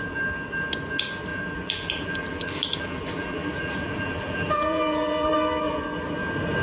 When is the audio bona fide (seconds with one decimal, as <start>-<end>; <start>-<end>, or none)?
0.0-1.3; 5.3-6.6